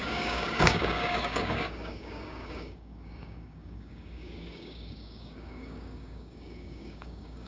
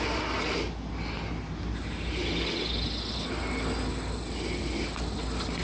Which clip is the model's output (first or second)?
first